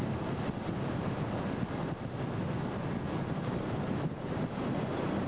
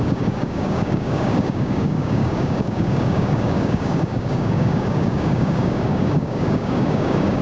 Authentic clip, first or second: first